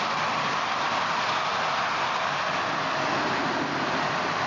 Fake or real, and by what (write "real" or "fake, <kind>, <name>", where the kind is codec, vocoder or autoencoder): real